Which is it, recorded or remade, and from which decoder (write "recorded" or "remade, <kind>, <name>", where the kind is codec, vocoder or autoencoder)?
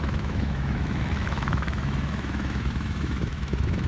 remade, autoencoder, DAC-VAE